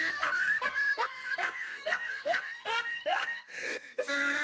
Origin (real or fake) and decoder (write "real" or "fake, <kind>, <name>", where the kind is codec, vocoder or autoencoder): fake, codec, SNAC